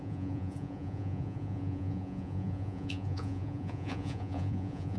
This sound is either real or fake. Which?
fake